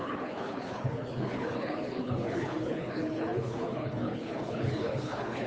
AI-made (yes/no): yes